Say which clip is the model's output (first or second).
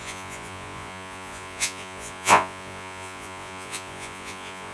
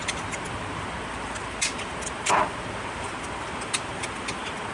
first